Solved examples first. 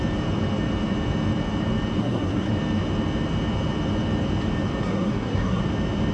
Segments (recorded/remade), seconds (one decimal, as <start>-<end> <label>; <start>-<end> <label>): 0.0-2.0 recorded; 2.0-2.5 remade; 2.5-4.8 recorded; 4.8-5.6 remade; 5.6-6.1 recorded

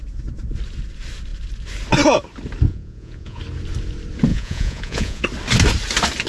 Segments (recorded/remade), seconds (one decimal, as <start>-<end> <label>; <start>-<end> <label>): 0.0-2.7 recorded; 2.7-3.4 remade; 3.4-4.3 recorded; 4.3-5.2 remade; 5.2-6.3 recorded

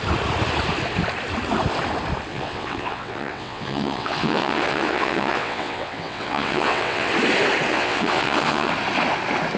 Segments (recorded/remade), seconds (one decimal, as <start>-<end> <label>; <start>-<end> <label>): 0.0-2.3 recorded; 2.3-7.1 remade; 7.1-7.7 recorded; 7.7-8.7 remade; 8.7-9.6 recorded

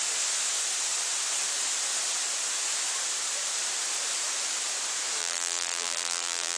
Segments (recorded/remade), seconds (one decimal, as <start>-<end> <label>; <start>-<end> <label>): 0.0-5.2 recorded; 5.2-6.6 remade